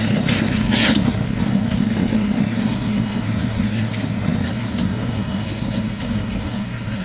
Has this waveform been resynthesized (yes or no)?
yes